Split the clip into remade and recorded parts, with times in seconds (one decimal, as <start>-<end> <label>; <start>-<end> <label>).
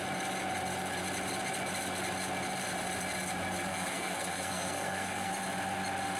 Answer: 0.0-3.7 recorded; 3.7-5.3 remade; 5.3-6.2 recorded